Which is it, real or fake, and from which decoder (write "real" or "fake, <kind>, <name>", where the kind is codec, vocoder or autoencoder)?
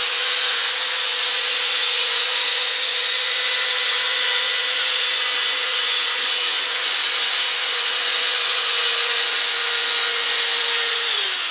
fake, vocoder, Vocos